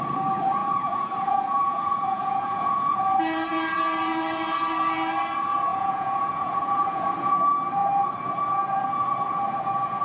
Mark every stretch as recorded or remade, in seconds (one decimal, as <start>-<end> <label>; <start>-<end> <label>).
0.0-0.6 recorded; 0.6-3.0 remade; 3.0-5.7 recorded; 5.7-7.1 remade; 7.1-10.0 recorded

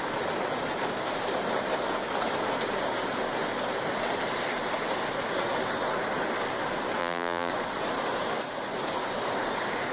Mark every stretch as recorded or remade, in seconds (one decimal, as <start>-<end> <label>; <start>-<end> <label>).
0.0-7.0 recorded; 7.0-7.5 remade; 7.5-9.9 recorded

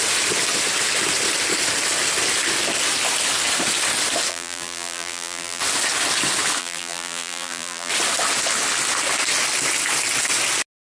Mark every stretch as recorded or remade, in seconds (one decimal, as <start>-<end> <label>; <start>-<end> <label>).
0.0-4.3 recorded; 4.3-5.6 remade; 5.6-6.6 recorded; 6.6-7.9 remade; 7.9-10.8 recorded

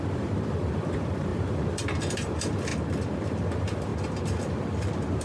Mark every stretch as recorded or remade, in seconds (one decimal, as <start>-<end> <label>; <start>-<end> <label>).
0.0-2.7 remade; 2.7-3.5 recorded; 3.5-3.9 remade; 3.9-5.2 recorded

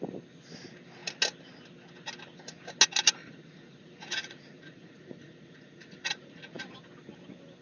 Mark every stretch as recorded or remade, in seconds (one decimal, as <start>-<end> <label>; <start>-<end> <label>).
0.0-3.2 recorded; 3.2-6.6 remade; 6.6-7.6 recorded

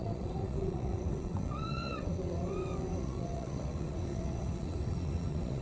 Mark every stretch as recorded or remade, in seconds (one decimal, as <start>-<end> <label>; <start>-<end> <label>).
0.0-5.6 remade

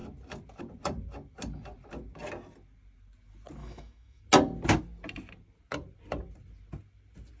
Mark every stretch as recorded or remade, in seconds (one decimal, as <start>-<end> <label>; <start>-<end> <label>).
0.0-3.6 recorded; 3.6-4.2 remade; 4.2-7.4 recorded